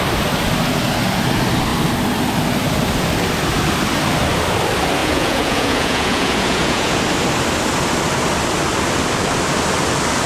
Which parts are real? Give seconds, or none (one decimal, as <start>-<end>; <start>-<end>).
0.0-5.0; 7.0-10.3

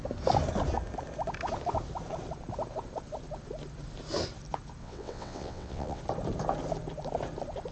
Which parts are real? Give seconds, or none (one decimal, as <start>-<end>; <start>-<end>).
0.0-4.8; 6.0-7.7

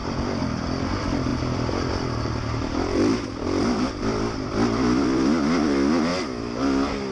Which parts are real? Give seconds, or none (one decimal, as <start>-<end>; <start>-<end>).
6.1-7.1

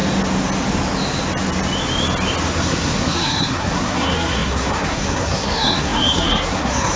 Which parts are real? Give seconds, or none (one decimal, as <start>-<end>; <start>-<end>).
0.0-2.5

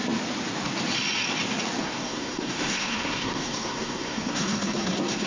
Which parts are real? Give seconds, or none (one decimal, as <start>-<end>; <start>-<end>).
0.0-1.8

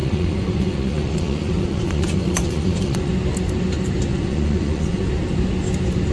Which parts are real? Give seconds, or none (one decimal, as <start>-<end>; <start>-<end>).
3.1-4.1; 5.1-6.1

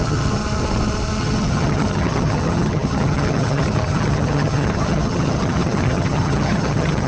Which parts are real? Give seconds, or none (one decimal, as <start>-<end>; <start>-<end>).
0.4-1.2

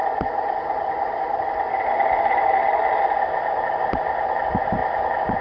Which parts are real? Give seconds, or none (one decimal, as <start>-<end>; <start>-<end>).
0.0-5.4